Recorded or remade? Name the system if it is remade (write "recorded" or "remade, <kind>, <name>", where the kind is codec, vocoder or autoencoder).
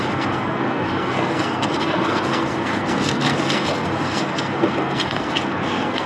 remade, codec, SNAC